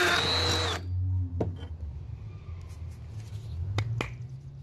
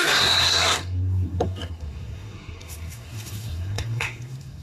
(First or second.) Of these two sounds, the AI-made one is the second